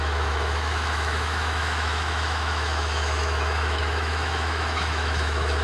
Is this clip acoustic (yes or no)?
no